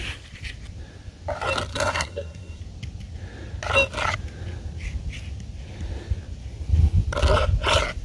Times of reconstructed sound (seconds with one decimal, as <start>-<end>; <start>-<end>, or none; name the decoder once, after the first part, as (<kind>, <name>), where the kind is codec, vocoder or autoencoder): 1.7-2.6 (codec, SNAC)